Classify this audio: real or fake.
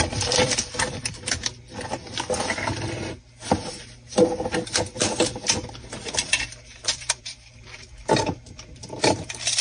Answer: fake